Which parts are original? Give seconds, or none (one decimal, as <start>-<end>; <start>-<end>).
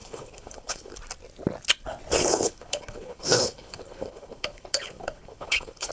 1.0-2.2